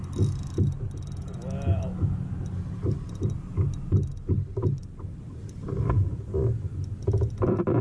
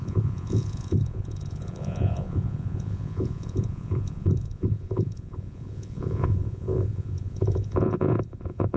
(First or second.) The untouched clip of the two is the first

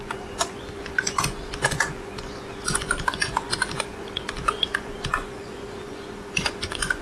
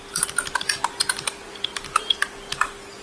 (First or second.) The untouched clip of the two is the second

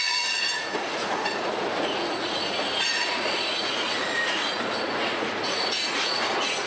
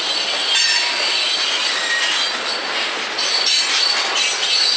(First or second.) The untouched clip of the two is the second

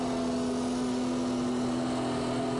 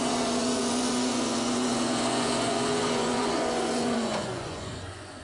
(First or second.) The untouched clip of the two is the first